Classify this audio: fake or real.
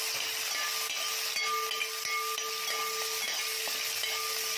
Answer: real